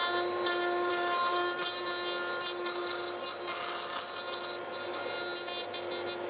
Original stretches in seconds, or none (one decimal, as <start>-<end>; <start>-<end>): 0.0-6.3

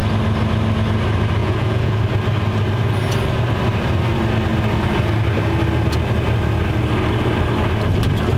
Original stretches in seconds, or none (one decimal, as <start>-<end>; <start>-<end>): 0.0-1.4; 2.0-8.4

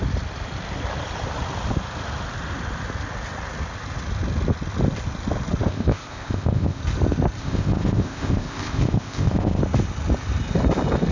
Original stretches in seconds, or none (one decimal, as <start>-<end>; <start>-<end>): 0.0-5.7; 6.8-7.4; 9.6-11.1

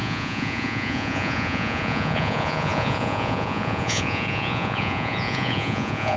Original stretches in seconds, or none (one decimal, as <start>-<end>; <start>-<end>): none

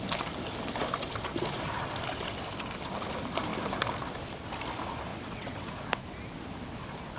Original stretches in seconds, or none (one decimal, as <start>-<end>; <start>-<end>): 0.0-5.1; 5.7-7.2

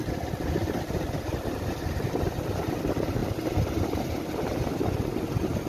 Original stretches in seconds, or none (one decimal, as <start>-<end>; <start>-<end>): 0.0-5.7